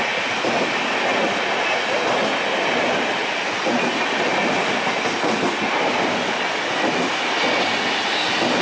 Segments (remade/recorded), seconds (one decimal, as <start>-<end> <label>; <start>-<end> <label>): 0.0-8.6 recorded